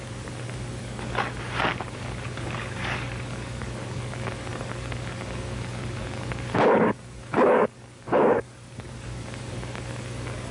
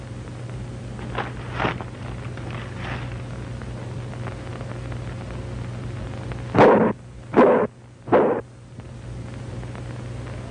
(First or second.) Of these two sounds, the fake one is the first